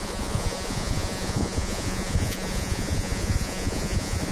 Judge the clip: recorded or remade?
remade